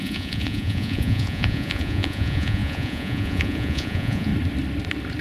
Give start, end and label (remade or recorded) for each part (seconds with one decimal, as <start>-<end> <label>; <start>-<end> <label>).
0.0-4.3 remade; 4.3-5.2 recorded